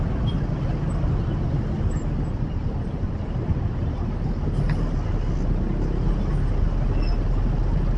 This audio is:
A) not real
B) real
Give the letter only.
B